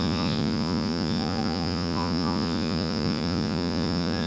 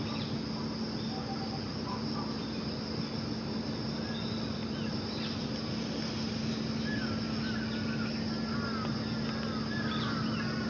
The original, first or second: second